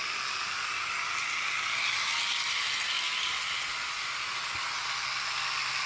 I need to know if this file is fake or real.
real